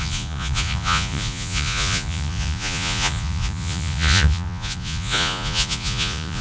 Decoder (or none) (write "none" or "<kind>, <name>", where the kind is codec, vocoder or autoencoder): vocoder, Vocos